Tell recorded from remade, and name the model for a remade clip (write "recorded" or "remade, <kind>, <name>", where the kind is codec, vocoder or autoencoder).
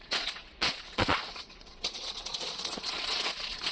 remade, vocoder, Vocos